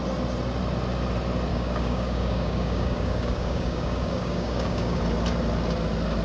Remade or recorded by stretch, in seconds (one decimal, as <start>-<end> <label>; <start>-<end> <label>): 0.0-1.5 recorded; 1.5-5.0 remade; 5.0-6.2 recorded